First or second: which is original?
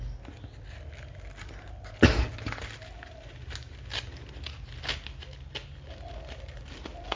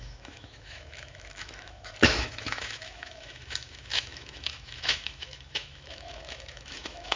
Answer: first